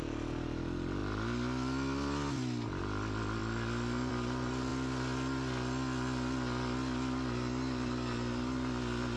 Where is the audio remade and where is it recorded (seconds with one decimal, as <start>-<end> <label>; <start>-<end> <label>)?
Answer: 0.0-9.2 recorded